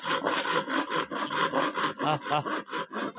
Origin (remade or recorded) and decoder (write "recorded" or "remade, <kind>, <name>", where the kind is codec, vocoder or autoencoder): recorded